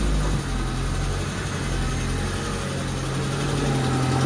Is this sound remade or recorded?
recorded